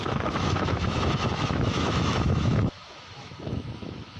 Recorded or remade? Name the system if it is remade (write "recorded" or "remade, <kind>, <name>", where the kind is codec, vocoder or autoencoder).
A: remade, autoencoder, DAC-VAE